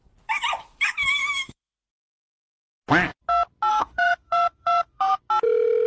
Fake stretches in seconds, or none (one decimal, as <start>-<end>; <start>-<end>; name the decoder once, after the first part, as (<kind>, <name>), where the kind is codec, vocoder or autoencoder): 1.2-1.9 (autoencoder, DAC-VAE); 3.7-5.2